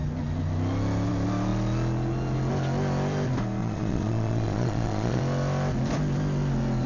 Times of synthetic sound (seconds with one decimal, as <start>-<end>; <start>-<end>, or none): 3.6-5.2